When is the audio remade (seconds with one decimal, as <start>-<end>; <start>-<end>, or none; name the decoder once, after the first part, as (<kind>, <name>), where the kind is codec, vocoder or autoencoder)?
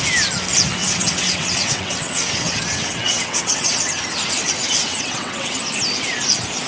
0.8-3.9 (vocoder, WaveNeXt); 4.9-5.6